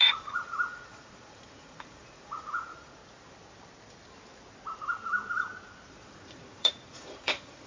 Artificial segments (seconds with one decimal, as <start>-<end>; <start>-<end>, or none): 0.0-3.0; 5.9-7.7